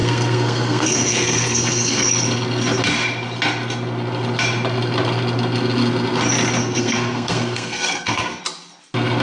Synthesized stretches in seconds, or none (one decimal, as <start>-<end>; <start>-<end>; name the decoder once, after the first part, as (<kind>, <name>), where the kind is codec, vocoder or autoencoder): 0.0-2.1 (codec, SNAC); 6.6-8.4